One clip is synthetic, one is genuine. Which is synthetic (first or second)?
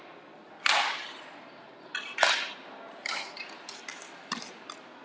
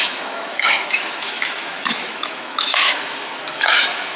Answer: second